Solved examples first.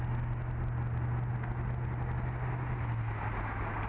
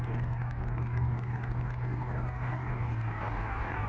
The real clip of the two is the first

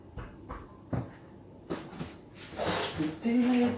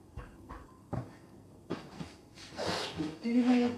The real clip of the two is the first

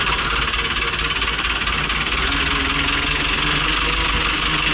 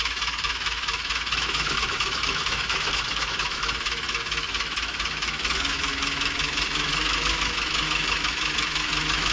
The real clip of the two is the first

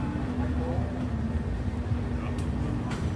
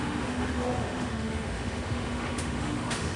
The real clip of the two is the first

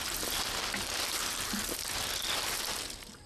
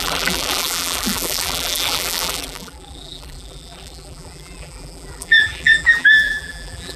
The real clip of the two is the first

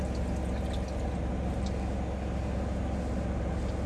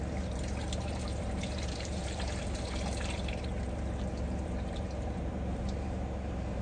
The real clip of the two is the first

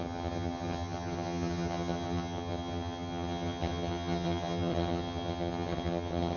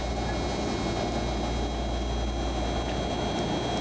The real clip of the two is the second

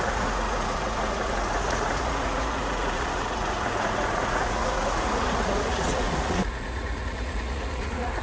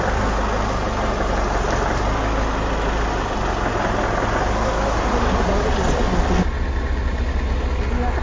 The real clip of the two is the second